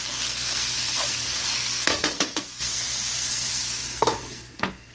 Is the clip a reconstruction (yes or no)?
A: yes